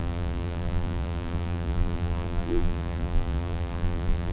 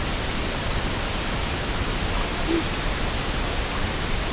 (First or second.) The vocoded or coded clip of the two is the first